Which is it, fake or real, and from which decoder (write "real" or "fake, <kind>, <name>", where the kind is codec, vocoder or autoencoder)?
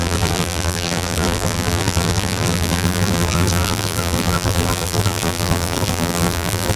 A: fake, vocoder, BigVGAN v2